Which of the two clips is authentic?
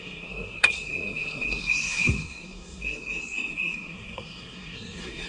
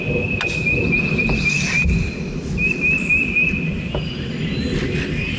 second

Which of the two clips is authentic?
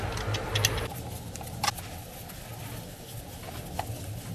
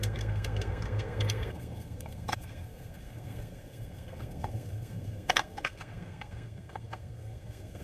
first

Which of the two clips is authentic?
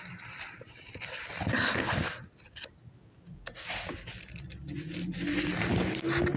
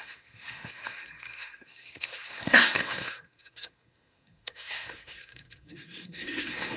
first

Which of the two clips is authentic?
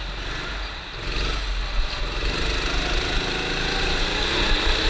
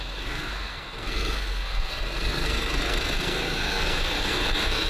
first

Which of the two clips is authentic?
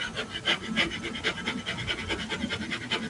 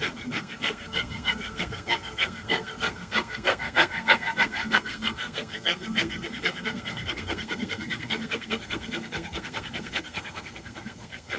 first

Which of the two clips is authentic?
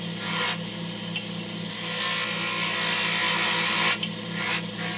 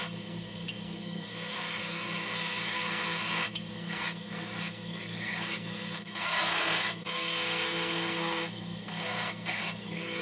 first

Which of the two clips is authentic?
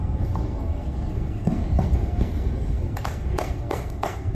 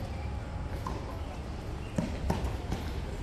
second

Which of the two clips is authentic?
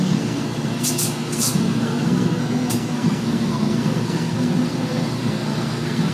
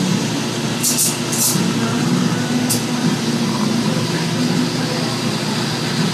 second